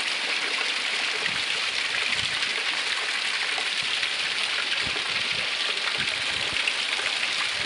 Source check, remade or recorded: remade